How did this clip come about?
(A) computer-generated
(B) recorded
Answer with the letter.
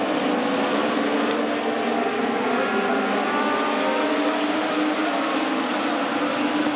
B